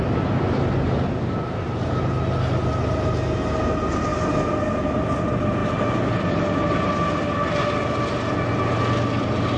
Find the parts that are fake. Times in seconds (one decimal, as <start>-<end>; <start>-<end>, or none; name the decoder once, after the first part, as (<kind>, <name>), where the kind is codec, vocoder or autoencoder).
none